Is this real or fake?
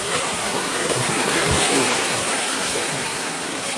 fake